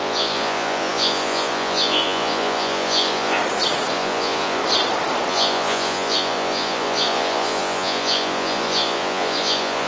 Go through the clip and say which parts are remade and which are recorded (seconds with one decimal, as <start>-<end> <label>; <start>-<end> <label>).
0.0-3.4 remade; 3.4-3.9 recorded; 3.9-4.6 remade; 4.6-5.3 recorded; 5.3-9.9 remade